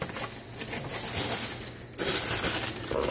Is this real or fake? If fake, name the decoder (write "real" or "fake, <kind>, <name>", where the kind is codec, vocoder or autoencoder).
real